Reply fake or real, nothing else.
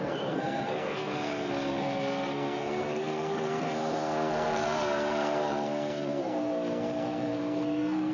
fake